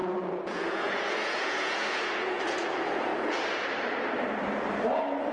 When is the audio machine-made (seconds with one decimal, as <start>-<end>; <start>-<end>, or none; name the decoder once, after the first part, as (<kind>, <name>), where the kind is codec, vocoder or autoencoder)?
0.0-3.1 (vocoder, Vocos)